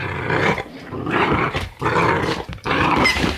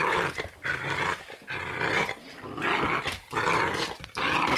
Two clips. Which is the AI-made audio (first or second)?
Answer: first